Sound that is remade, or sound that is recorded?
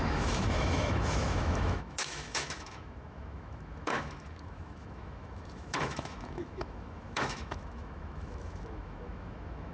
remade